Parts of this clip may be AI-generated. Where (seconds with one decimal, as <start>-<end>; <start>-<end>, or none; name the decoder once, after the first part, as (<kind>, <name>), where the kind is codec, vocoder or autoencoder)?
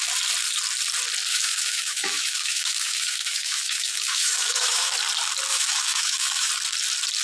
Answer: 1.3-4.9 (autoencoder, DAC-VAE); 5.5-6.5